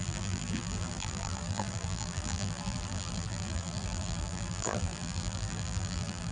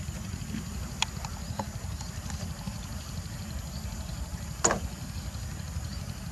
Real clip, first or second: second